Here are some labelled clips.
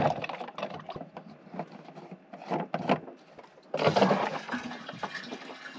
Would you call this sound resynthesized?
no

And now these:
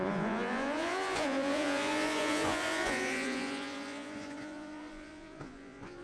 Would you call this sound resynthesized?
yes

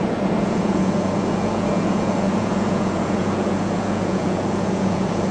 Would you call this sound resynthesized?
yes